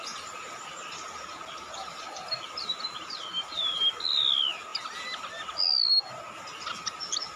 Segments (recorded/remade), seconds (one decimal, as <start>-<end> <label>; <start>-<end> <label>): 0.0-1.8 recorded; 1.8-3.8 remade; 3.8-7.4 recorded